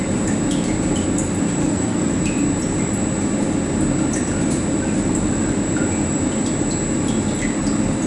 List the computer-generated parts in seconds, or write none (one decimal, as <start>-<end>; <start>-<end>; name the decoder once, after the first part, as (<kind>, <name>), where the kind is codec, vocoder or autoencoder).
1.6-2.2 (codec, SNAC)